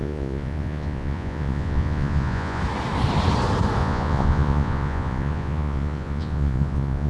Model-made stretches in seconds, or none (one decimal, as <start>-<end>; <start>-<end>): 0.0-2.6; 3.8-7.1

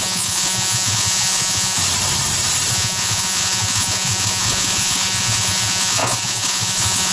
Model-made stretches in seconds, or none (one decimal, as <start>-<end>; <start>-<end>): 0.0-1.8; 2.7-7.1